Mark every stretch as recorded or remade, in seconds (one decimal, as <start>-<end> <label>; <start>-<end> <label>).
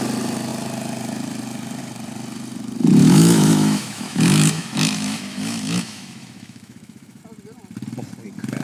0.0-3.0 recorded; 3.0-7.2 remade; 7.2-8.6 recorded